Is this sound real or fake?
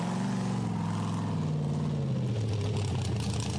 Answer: real